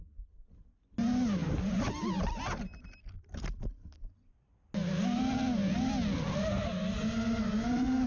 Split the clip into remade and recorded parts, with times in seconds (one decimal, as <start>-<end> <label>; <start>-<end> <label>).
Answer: 0.0-8.1 recorded